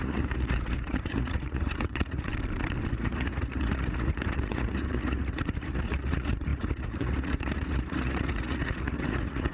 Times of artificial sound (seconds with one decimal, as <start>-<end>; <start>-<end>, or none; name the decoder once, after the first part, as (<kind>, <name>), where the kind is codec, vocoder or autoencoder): 0.0-2.3 (vocoder, Vocos); 2.9-9.5